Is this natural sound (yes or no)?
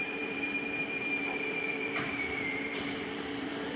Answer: no